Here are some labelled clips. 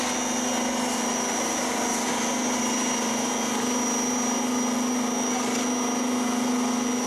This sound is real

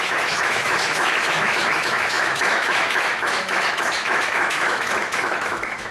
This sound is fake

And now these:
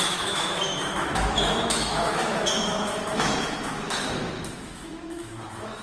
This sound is fake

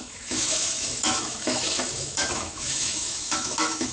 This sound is fake